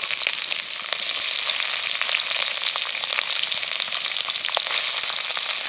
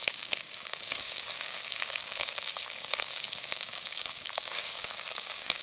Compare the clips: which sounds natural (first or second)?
first